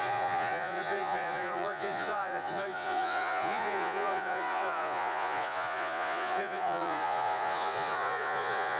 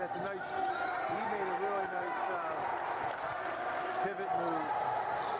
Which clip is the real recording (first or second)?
second